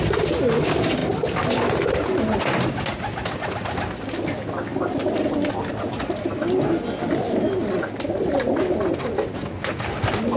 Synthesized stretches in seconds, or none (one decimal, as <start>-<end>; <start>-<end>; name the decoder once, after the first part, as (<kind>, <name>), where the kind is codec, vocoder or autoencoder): 4.7-5.5 (vocoder, BigVGAN v2)